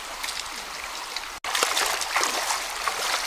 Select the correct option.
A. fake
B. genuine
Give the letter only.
B